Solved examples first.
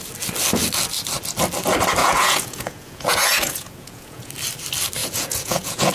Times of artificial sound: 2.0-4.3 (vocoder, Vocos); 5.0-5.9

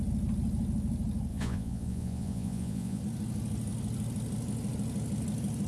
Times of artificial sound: 1.3-3.0 (vocoder, Vocos)